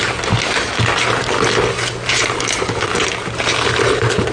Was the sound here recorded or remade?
recorded